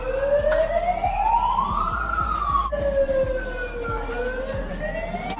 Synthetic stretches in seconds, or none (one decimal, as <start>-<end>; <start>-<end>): none